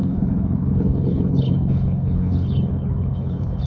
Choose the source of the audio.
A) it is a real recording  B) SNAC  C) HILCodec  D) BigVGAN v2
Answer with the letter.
C